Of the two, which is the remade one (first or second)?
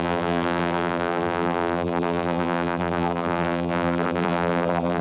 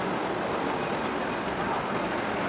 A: first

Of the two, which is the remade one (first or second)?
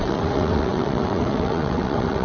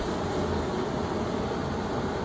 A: first